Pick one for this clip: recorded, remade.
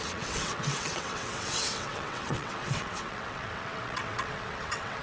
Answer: remade